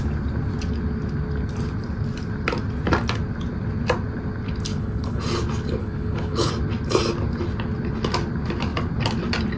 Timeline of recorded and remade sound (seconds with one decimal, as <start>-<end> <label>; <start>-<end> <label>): 0.0-4.7 recorded; 4.7-5.2 remade; 5.2-5.8 recorded; 5.8-6.5 remade; 6.5-9.6 recorded